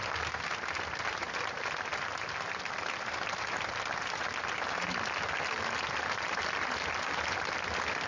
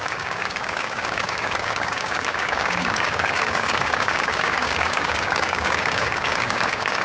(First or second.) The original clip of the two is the first